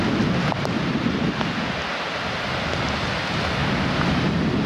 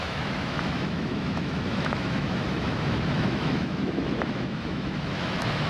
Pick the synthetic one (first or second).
second